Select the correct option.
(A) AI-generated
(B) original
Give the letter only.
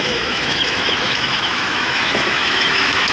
A